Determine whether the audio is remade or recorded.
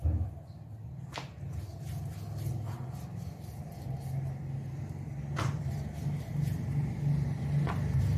recorded